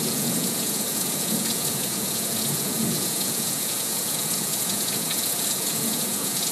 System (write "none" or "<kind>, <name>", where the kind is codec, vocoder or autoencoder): vocoder, Vocos